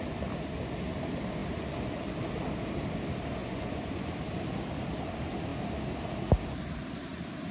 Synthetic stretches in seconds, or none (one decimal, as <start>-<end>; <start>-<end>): 3.4-4.1